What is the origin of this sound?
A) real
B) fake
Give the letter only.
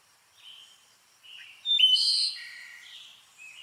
B